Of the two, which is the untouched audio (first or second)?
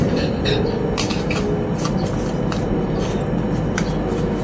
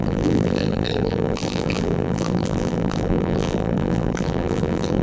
first